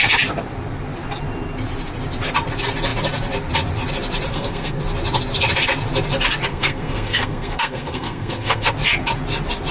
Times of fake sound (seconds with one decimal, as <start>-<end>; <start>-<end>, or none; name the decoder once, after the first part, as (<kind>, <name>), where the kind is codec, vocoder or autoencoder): 4.3-4.8 (codec, SNAC); 6.5-8.7